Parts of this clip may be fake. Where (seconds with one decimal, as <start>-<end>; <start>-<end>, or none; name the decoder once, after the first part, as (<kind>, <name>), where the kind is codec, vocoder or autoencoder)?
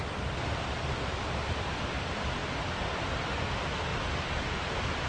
none